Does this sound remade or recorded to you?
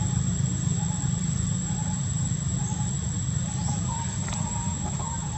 recorded